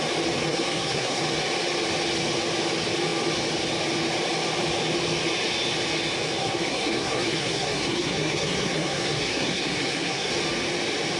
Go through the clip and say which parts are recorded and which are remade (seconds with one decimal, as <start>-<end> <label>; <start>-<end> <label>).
0.0-0.5 recorded; 0.5-1.2 remade; 1.2-6.4 recorded; 6.4-10.3 remade; 10.3-11.2 recorded